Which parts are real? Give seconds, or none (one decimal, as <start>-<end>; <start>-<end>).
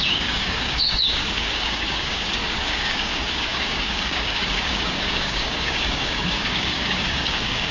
none